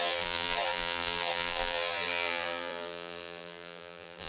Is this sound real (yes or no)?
no